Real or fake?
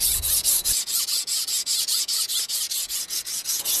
fake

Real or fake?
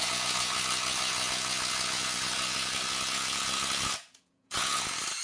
fake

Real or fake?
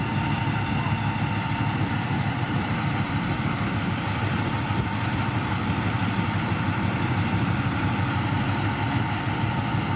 real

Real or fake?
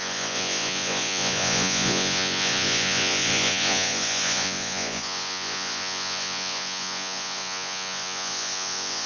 fake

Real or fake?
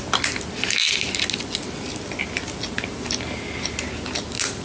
real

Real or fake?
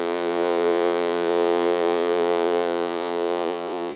fake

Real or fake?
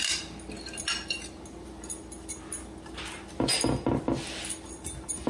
real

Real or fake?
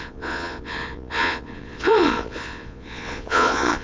fake